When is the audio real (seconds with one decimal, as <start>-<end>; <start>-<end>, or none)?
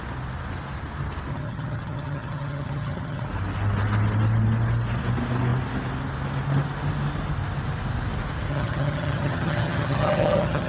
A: 0.0-1.3; 3.3-8.5